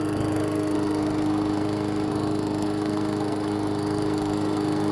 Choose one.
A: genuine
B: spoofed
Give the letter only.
B